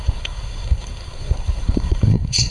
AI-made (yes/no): yes